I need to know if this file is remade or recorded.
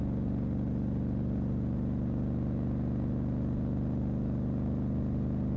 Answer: recorded